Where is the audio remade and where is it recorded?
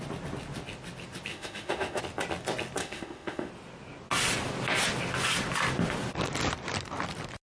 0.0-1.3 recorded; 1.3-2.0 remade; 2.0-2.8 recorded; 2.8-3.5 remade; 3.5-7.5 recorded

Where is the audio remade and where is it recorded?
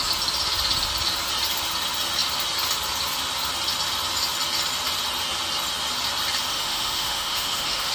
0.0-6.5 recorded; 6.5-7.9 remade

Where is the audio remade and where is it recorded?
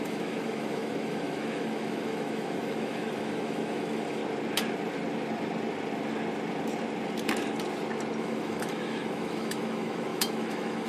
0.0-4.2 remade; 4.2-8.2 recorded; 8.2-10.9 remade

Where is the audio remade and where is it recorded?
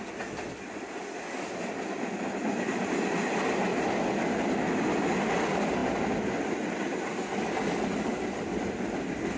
0.0-9.4 recorded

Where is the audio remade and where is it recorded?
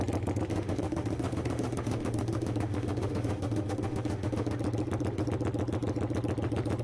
0.0-0.5 recorded; 0.5-4.6 remade; 4.6-6.8 recorded